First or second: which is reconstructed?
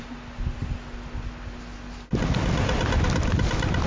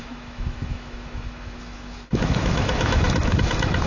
second